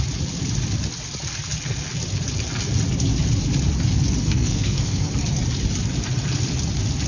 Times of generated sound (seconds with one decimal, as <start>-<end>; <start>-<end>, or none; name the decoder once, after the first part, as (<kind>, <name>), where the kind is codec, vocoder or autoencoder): 4.2-5.1 (codec, SNAC)